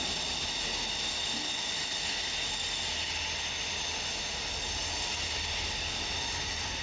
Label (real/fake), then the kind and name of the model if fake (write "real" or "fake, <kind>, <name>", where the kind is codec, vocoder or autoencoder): real